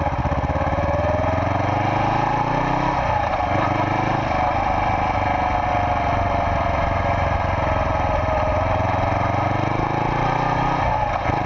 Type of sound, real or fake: real